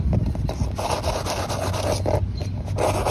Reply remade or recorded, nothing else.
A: recorded